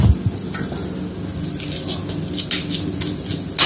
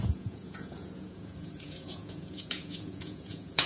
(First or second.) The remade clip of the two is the second